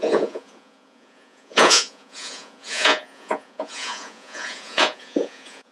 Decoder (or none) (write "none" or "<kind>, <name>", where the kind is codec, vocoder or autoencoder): vocoder, Vocos